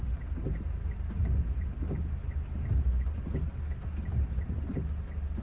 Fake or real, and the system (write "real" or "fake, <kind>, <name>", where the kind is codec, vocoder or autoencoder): real